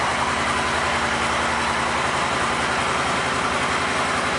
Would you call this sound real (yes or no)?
yes